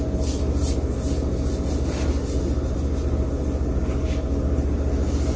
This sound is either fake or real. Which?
real